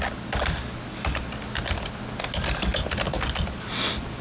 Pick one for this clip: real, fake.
real